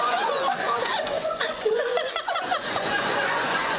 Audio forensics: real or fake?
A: fake